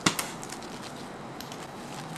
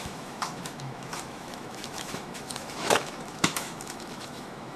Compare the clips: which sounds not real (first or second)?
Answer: second